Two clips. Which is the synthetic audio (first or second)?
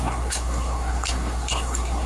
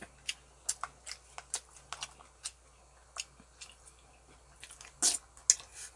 first